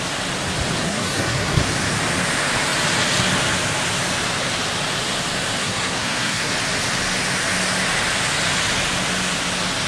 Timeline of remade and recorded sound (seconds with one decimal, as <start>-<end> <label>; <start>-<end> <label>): 0.0-0.8 recorded; 0.8-1.6 remade; 1.6-5.6 recorded; 5.6-6.5 remade; 6.5-9.9 recorded